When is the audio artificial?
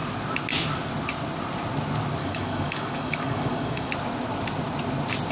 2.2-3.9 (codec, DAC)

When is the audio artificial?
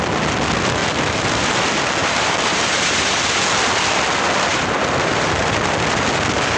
0.8-1.6 (vocoder, BigVGAN v2); 2.0-3.2; 4.5-5.4